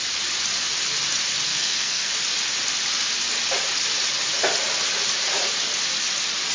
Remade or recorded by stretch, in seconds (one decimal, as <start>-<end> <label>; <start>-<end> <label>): 0.0-1.5 recorded; 1.5-2.1 remade; 2.1-6.5 recorded